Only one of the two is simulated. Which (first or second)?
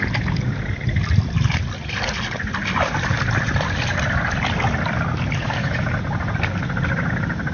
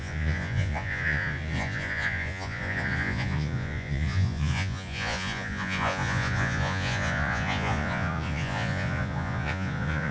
second